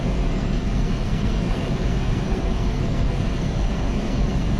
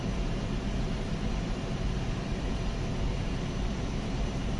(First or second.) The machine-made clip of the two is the first